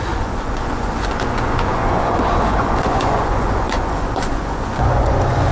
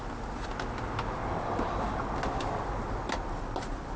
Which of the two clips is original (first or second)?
second